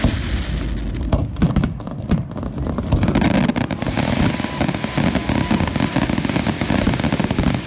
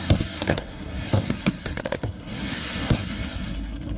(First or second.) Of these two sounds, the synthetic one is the second